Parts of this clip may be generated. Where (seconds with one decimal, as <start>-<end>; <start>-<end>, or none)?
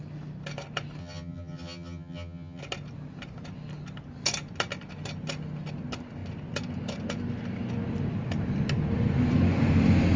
1.0-2.6